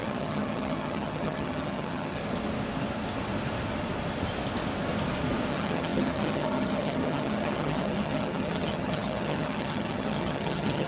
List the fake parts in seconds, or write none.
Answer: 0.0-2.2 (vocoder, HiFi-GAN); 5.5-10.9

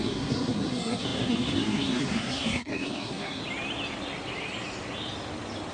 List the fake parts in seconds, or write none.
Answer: 0.0-3.4 (codec, SNAC)

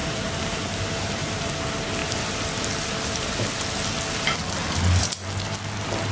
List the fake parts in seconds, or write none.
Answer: 0.0-1.5 (vocoder, BigVGAN v2)

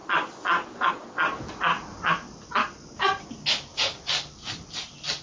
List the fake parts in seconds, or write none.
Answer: 0.0-0.9 (vocoder, BigVGAN v2)

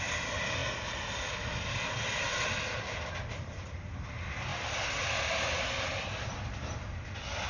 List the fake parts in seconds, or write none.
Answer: none

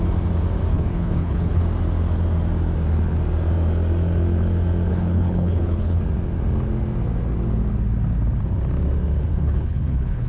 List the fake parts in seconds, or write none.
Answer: 0.7-1.6 (codec, HILCodec); 4.9-6.0; 9.3-10.3

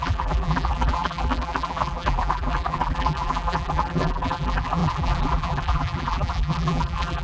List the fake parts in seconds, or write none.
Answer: 0.0-7.2 (vocoder, BigVGAN v2)